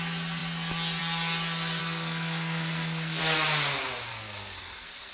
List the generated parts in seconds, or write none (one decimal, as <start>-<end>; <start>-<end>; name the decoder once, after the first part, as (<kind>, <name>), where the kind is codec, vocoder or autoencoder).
1.8-3.2 (codec, SNAC); 4.1-5.1